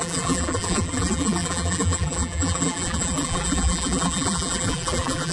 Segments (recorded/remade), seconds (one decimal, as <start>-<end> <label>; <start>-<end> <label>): 0.0-5.3 remade